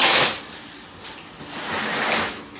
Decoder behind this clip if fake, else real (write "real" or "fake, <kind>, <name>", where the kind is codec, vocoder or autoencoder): real